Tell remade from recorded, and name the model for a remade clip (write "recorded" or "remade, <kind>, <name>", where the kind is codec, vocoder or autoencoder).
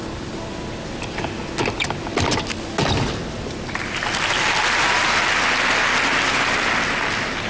recorded